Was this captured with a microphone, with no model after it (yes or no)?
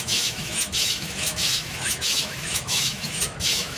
no